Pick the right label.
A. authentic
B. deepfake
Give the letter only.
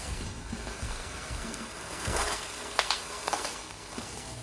B